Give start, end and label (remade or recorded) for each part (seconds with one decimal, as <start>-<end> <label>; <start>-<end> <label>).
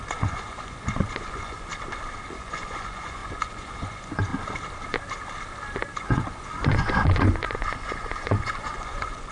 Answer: 0.0-1.7 remade; 1.7-2.3 recorded; 2.3-4.3 remade; 4.3-6.0 recorded; 6.0-9.3 remade